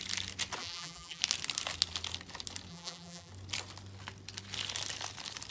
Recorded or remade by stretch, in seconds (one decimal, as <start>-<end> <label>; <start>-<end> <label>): 0.0-0.6 recorded; 0.6-1.2 remade; 1.2-2.7 recorded; 2.7-3.3 remade; 3.3-5.5 recorded